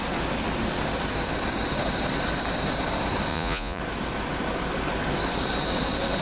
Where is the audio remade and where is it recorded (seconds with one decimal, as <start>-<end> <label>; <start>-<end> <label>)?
0.0-3.3 recorded; 3.3-3.8 remade; 3.8-6.2 recorded